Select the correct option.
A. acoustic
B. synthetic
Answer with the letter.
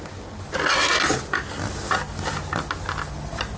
A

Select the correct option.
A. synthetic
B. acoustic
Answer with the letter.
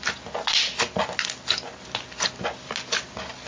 B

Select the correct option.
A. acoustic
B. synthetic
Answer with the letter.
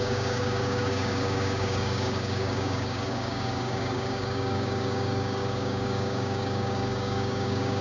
B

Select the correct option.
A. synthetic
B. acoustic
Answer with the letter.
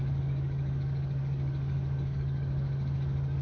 A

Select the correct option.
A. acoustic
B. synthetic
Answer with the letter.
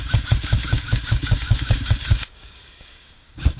B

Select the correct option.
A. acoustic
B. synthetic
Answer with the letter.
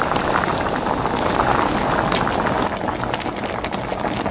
A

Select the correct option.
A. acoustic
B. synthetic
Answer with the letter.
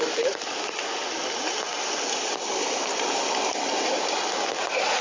A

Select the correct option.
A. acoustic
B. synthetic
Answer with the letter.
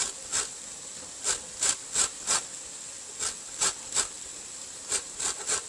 A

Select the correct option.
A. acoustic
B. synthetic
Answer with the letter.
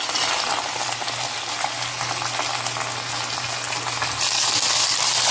A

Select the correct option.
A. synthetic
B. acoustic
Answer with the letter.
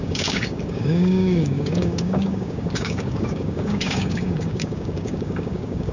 A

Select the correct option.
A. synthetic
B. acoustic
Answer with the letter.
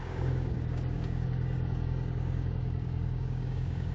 A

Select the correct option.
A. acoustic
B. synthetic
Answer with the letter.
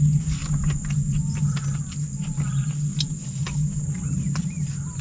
A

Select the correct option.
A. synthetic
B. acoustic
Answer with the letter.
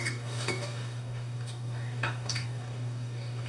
A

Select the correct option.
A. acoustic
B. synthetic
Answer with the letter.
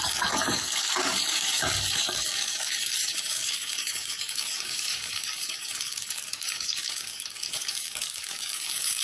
B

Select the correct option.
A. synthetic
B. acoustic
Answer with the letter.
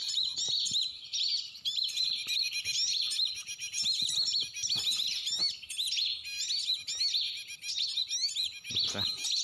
B